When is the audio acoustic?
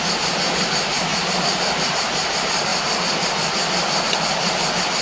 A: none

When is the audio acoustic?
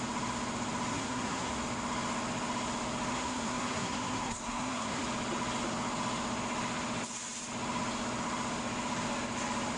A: 0.0-0.9; 1.5-3.1; 5.0-9.8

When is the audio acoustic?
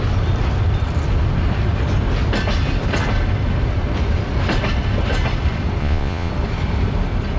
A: 0.0-5.8; 6.3-7.4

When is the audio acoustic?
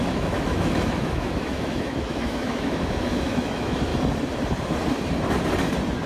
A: 3.9-6.1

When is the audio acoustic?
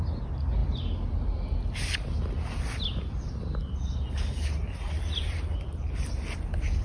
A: 0.0-6.8